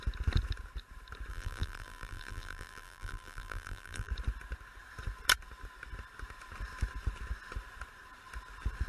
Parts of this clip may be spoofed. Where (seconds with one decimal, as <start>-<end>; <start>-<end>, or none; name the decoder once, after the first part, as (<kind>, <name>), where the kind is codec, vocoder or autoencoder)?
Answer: 1.3-4.1 (vocoder, BigVGAN v2)